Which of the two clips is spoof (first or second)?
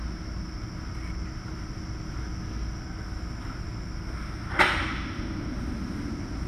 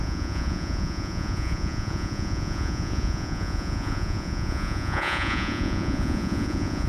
second